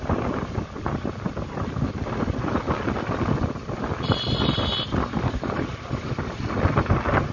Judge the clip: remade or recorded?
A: recorded